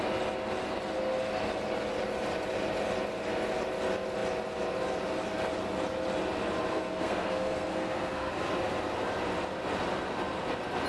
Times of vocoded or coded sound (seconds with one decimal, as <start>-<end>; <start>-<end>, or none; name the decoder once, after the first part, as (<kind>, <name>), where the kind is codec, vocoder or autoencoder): 6.7-8.3 (codec, SNAC)